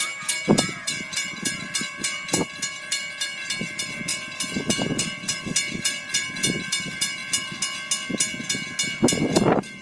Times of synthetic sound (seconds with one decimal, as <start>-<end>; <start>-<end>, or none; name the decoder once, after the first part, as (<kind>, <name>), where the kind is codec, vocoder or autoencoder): 0.0-7.2 (vocoder, BigVGAN v2); 9.2-9.8

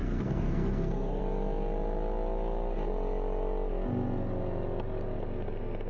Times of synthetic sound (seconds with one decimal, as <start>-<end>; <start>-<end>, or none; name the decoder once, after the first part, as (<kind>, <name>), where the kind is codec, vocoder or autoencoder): 0.0-1.2 (codec, SNAC)

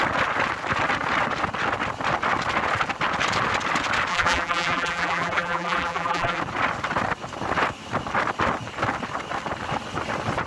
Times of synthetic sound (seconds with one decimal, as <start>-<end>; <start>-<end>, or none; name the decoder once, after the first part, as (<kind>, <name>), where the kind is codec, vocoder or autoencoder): 4.1-6.4 (vocoder, BigVGAN v2)

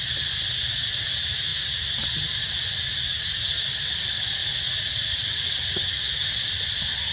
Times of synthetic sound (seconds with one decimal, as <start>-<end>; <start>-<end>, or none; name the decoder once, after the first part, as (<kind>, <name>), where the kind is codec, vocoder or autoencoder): 4.4-5.5 (vocoder, Vocos)

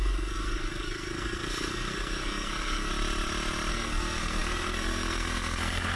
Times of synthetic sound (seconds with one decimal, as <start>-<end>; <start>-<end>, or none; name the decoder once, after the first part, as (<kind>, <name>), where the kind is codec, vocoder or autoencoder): 0.0-2.9 (codec, SNAC); 3.7-6.0

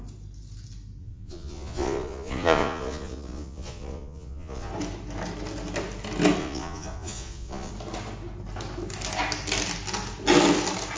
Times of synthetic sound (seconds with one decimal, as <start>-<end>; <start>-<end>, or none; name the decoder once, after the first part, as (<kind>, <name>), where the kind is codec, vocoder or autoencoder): 1.0-4.7 (vocoder, Vocos); 6.4-7.7

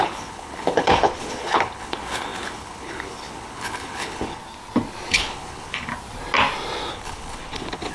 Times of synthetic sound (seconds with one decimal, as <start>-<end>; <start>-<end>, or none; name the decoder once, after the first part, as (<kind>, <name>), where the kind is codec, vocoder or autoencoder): 0.0-4.4 (codec, HILCodec); 5.1-5.9; 6.9-7.9

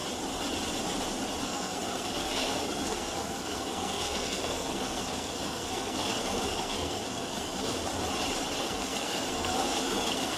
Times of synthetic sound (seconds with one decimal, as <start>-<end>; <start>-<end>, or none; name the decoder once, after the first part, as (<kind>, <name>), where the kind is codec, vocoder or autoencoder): 1.4-7.9 (codec, SNAC); 8.6-10.4